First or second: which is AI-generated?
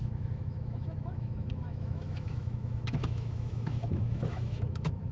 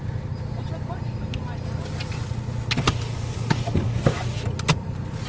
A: first